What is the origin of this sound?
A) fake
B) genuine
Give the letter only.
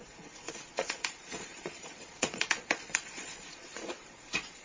A